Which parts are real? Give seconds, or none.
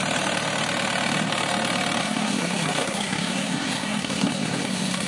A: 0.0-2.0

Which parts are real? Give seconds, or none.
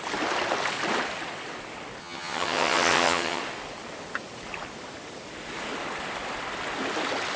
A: 0.0-2.0; 3.4-7.4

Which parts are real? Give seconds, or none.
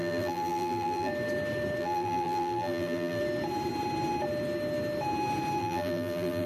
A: 1.1-1.8; 3.2-5.6